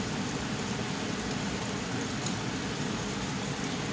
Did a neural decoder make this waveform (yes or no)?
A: no